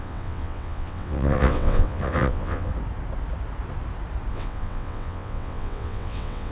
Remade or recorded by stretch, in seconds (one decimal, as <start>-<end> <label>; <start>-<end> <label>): 0.0-2.7 remade; 2.7-4.3 recorded; 4.3-6.5 remade